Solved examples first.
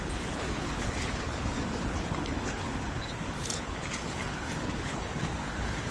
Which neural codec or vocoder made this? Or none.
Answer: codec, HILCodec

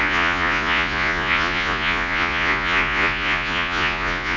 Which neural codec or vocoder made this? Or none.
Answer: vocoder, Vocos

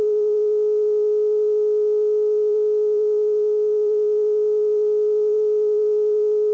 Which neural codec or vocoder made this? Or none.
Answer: none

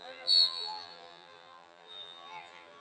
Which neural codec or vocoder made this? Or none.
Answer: vocoder, BigVGAN v2